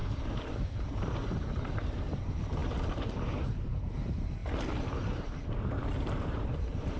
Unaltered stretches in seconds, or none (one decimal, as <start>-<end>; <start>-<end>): none